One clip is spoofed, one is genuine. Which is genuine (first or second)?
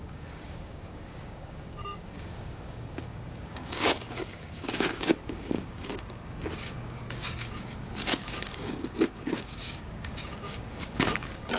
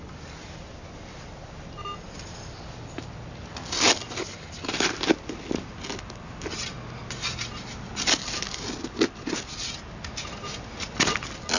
second